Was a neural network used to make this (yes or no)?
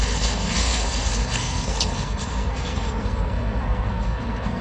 yes